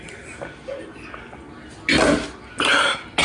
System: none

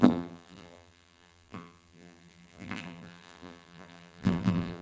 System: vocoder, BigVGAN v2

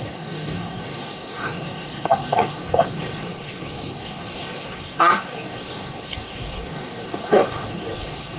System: codec, DAC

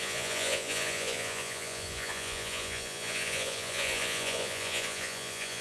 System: vocoder, Vocos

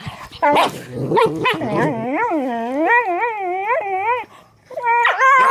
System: none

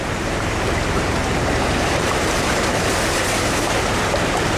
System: vocoder, BigVGAN v2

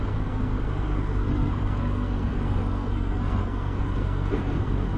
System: codec, SNAC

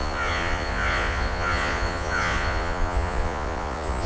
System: vocoder, Vocos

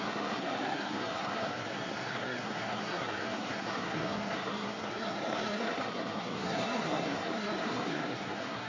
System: codec, SNAC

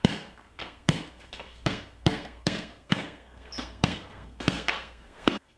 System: codec, SNAC